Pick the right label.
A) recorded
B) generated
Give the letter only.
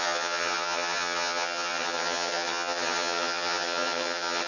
B